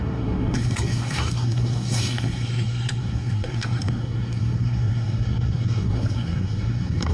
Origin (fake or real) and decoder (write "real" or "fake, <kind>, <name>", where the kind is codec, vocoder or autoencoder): fake, codec, SNAC